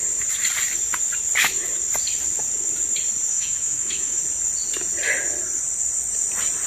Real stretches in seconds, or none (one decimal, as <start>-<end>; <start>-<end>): 0.0-3.3; 4.2-6.7